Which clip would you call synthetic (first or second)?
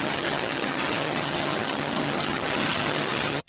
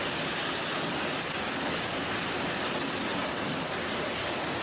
first